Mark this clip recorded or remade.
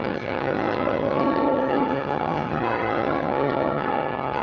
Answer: remade